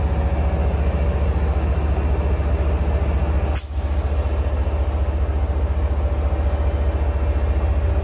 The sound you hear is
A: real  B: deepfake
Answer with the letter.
A